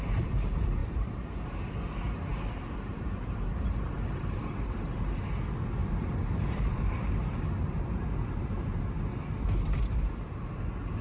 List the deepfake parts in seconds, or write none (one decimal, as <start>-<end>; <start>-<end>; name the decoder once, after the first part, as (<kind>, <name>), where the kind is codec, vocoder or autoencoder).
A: 0.8-1.6 (vocoder, BigVGAN v2); 2.3-5.2; 5.8-8.8